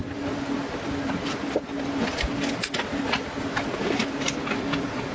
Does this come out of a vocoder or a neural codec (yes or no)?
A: no